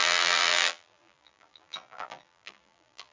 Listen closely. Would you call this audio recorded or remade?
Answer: remade